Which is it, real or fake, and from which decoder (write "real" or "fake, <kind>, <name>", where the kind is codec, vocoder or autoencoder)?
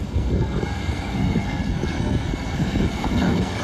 fake, codec, SNAC